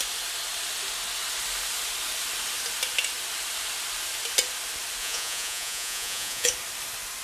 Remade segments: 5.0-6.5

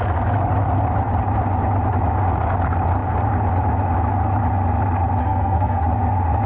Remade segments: 5.2-5.8

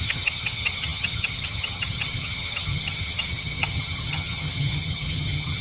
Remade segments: 0.0-5.6